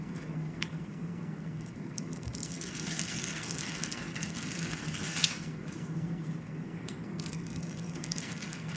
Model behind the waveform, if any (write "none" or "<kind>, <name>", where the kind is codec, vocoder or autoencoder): codec, SNAC